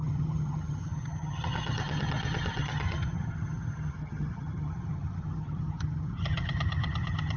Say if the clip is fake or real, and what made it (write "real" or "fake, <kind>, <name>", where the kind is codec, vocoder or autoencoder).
fake, vocoder, HiFi-GAN